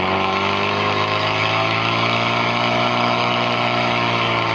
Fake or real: fake